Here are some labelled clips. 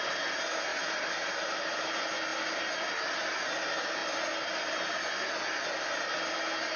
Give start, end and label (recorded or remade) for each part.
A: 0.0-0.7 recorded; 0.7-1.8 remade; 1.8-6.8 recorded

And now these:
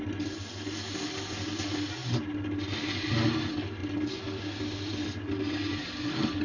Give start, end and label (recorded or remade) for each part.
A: 0.0-6.4 recorded

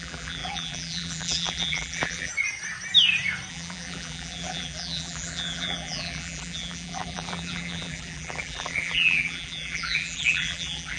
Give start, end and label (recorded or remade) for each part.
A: 0.0-2.3 remade; 2.3-3.5 recorded; 3.5-11.0 remade